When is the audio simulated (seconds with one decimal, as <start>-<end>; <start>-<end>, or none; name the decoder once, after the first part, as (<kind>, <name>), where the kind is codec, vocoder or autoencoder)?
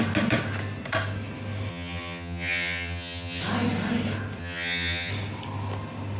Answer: 1.7-3.4 (vocoder, HiFi-GAN); 4.4-5.1